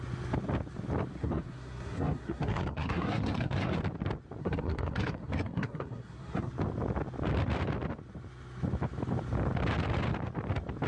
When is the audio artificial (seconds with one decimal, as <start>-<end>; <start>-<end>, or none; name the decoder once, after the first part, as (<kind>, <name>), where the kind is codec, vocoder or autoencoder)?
1.1-3.8 (codec, SNAC); 4.4-6.5

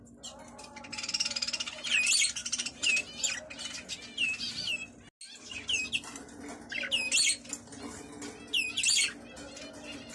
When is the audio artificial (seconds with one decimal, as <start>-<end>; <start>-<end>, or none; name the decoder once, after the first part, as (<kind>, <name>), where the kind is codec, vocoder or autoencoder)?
2.4-3.1 (vocoder, BigVGAN v2)

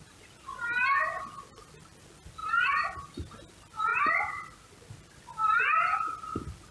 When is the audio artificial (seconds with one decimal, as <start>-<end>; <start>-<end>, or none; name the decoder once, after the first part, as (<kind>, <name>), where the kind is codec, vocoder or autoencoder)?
2.4-3.0 (vocoder, BigVGAN v2); 3.9-5.3

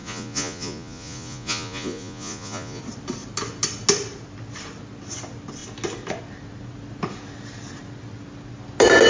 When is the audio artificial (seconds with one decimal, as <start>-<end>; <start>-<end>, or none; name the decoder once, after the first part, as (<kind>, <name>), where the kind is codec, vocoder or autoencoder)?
0.0-2.8 (vocoder, Vocos)